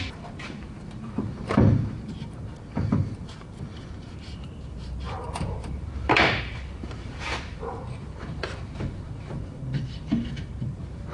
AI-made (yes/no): yes